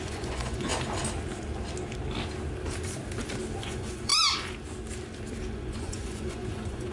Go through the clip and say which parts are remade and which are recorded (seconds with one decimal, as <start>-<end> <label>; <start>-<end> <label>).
0.0-0.7 remade; 0.7-3.6 recorded; 3.6-4.1 remade; 4.1-5.5 recorded; 5.5-6.9 remade